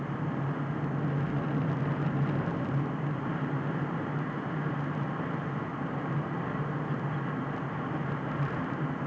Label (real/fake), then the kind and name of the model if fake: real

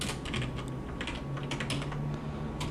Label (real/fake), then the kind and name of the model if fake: real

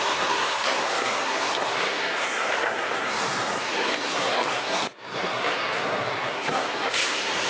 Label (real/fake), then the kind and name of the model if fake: fake, codec, SNAC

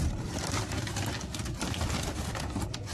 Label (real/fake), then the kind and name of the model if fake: real